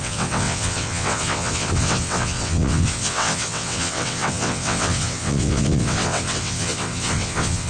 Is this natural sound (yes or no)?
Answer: no